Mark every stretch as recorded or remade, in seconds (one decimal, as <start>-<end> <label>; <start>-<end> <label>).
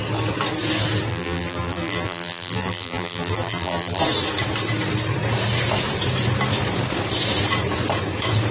0.0-1.1 recorded; 1.1-4.0 remade; 4.0-8.5 recorded